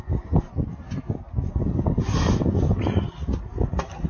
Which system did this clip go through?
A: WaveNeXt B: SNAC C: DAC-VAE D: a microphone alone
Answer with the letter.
D